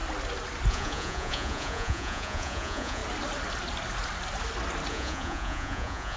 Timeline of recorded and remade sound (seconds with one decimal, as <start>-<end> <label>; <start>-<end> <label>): 0.0-0.7 recorded; 0.7-3.0 remade; 3.0-4.9 recorded; 4.9-6.2 remade